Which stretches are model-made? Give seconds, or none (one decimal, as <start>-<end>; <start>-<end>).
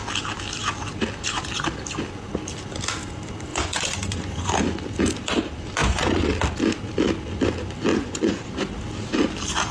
3.5-4.5; 5.8-6.3; 7.9-8.4